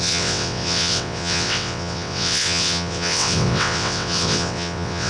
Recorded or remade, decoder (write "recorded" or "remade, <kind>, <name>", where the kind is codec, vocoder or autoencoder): remade, vocoder, WaveNeXt